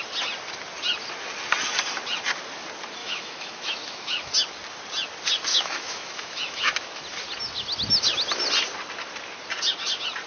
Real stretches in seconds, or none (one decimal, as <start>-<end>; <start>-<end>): 0.0-3.0; 4.3-5.5; 7.0-10.3